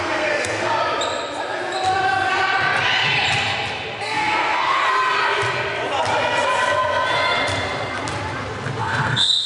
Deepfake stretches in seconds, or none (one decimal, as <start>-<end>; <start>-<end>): 0.0-0.8; 4.0-4.8; 8.8-9.5